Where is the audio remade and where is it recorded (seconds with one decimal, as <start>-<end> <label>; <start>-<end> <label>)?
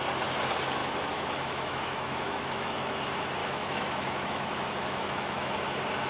0.0-0.8 recorded; 0.8-3.0 remade; 3.0-3.4 recorded; 3.4-5.5 remade; 5.5-6.1 recorded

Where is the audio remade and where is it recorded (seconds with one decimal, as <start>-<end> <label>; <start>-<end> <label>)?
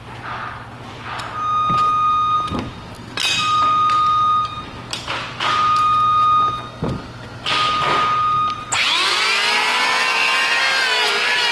0.0-11.5 recorded